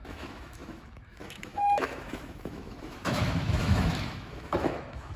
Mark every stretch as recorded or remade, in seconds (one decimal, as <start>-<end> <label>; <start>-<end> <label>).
0.0-5.2 remade